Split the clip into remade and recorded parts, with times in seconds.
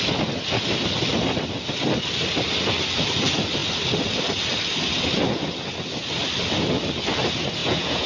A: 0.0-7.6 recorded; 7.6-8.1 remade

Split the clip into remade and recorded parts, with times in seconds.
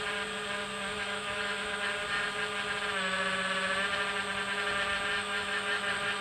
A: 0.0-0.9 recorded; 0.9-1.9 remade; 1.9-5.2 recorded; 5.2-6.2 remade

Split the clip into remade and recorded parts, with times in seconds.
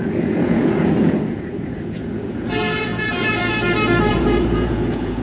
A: 0.0-3.4 remade; 3.4-4.1 recorded; 4.1-5.2 remade